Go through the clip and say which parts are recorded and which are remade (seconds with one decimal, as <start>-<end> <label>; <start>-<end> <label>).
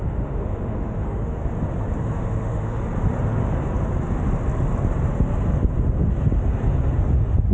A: 0.0-1.4 remade; 1.4-2.0 recorded; 2.0-2.8 remade; 2.8-7.5 recorded